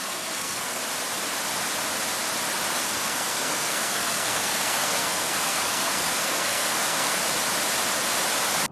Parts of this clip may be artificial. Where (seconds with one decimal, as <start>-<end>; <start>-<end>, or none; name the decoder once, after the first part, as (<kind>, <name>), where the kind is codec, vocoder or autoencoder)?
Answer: 0.0-0.8 (codec, SNAC); 2.8-7.2